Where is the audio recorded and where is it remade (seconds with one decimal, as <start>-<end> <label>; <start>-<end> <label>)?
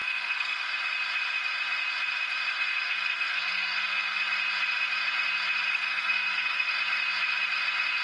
0.0-0.7 remade; 0.7-2.5 recorded; 2.5-4.2 remade; 4.2-5.7 recorded; 5.7-6.7 remade; 6.7-8.0 recorded